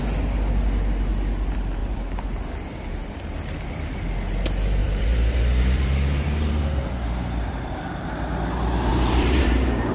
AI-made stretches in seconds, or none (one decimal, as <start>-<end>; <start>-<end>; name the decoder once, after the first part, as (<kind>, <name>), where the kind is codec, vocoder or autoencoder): 1.8-3.6 (vocoder, BigVGAN v2); 4.8-7.7; 8.9-9.9